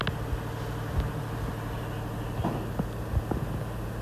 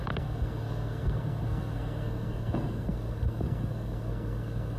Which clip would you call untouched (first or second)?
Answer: first